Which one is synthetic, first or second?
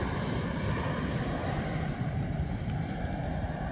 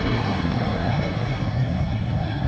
second